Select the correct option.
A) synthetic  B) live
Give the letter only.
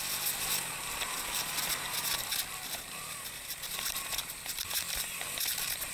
B